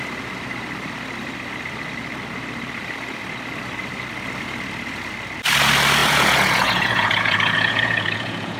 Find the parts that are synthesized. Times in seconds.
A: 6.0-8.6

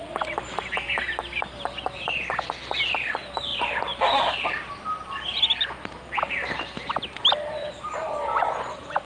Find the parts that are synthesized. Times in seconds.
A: 3.5-4.7; 7.4-8.1

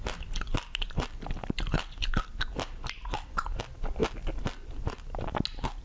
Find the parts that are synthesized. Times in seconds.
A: 3.0-3.6

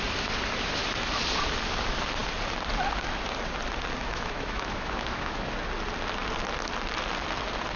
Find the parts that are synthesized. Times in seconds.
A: 4.0-5.5

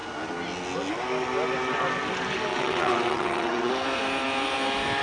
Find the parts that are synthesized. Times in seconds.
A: 2.5-3.7

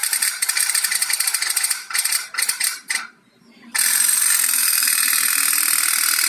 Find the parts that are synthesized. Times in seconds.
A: 0.0-0.7; 2.7-5.3

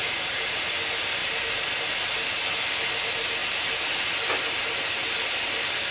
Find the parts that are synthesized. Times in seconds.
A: none

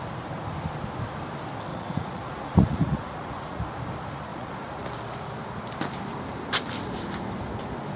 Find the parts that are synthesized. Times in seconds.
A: 1.7-3.6; 4.3-4.9